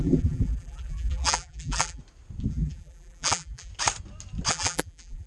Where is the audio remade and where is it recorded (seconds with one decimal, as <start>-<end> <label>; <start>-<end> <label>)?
0.0-2.0 remade; 2.0-2.5 recorded; 2.5-3.7 remade; 3.7-4.5 recorded; 4.5-5.3 remade